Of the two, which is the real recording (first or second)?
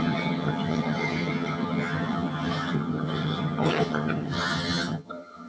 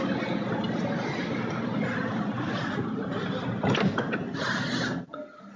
second